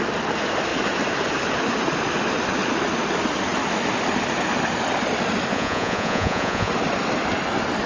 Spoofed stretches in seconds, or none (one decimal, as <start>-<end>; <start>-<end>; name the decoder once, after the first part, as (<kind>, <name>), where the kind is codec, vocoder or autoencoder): 5.5-6.7 (vocoder, Vocos)